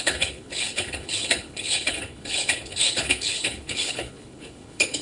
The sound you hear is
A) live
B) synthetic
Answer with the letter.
B